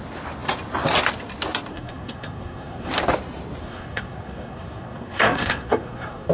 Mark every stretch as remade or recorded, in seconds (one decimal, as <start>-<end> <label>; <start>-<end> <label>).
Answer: 0.0-1.7 recorded; 1.7-2.9 remade; 2.9-3.6 recorded; 3.6-6.3 remade